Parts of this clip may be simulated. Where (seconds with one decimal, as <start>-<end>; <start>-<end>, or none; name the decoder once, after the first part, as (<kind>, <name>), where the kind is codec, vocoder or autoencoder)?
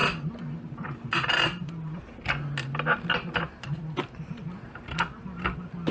none